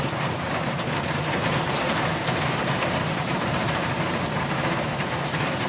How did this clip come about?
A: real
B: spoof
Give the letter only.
B